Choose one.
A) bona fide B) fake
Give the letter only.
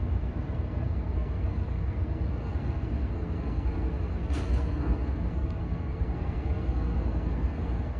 B